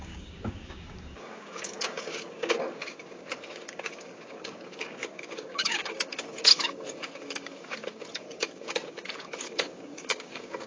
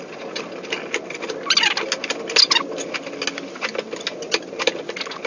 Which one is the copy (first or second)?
first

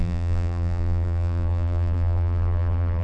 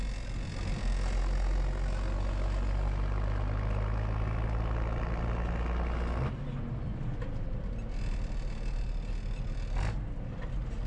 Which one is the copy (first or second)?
first